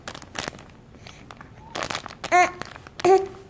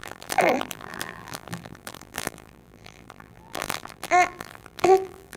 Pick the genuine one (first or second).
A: first